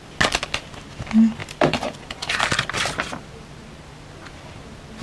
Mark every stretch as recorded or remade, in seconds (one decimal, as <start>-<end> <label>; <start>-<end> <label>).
0.0-1.4 recorded; 1.4-3.3 remade; 3.3-5.0 recorded